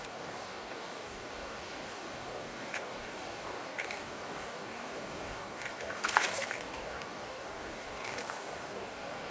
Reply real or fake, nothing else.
fake